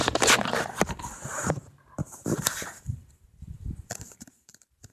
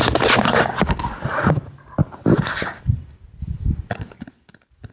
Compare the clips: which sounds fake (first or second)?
first